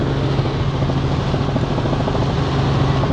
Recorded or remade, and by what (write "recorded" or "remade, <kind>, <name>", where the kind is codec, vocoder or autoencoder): recorded